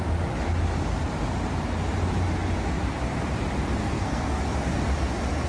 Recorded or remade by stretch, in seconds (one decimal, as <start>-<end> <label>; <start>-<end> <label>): 0.0-3.8 recorded; 3.8-4.4 remade; 4.4-5.5 recorded